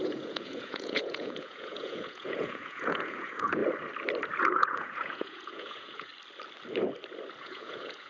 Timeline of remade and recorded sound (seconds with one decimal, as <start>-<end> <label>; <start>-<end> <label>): 0.0-3.6 remade; 3.6-4.4 recorded; 4.4-6.1 remade; 6.1-7.4 recorded; 7.4-8.1 remade